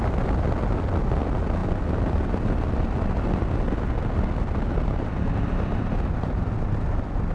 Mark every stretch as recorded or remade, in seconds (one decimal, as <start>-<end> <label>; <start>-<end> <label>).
0.0-7.3 recorded

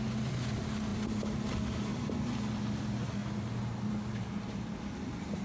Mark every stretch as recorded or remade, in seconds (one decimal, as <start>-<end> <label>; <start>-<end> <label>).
0.0-5.4 recorded